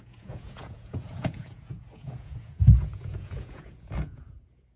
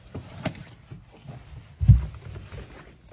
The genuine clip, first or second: second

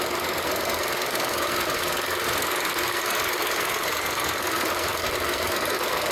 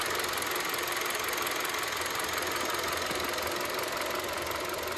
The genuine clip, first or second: second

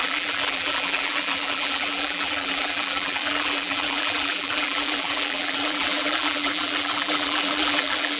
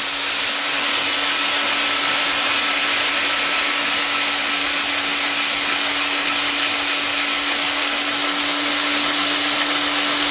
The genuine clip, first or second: second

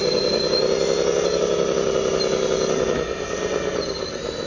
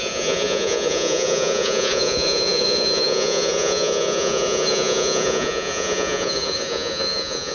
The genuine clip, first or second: first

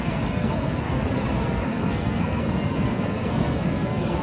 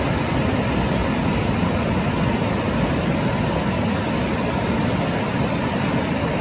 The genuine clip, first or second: second